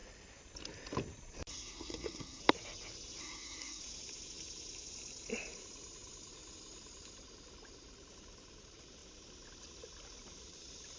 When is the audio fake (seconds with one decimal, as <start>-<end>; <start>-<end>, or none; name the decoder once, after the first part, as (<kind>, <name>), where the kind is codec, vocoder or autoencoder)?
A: 1.5-2.4 (codec, SNAC); 3.2-3.8